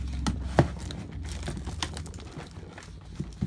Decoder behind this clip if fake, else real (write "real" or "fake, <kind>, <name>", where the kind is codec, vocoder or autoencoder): real